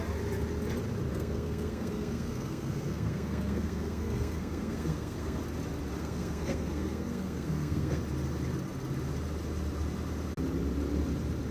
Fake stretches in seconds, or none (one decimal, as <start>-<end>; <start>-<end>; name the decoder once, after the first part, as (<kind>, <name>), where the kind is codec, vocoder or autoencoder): 1.1-5.4 (codec, SNAC); 6.0-8.0